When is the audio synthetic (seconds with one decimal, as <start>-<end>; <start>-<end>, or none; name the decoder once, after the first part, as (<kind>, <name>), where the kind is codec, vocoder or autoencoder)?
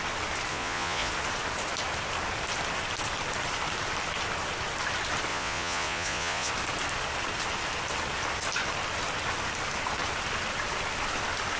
0.5-1.1 (vocoder, Vocos); 5.3-6.5